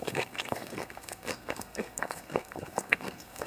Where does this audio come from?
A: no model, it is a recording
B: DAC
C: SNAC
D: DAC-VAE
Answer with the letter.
C